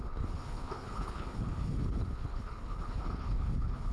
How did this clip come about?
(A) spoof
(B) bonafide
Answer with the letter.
A